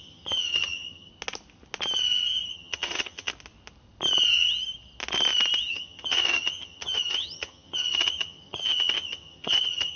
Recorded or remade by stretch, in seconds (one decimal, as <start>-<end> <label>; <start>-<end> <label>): 0.0-1.1 remade; 1.1-2.5 recorded; 2.5-3.3 remade; 3.3-5.7 recorded; 5.7-10.0 remade